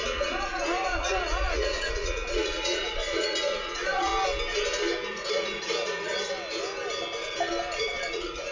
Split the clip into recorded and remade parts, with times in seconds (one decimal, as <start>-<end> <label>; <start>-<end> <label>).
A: 0.0-4.1 remade; 4.1-5.1 recorded; 5.1-6.1 remade; 6.1-7.8 recorded; 7.8-8.5 remade